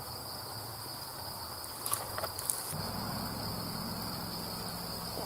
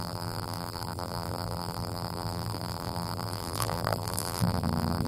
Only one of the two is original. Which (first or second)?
first